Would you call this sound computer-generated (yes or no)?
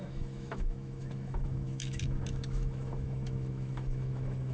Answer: yes